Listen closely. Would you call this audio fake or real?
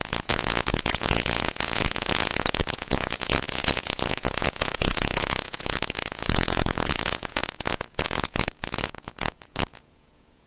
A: fake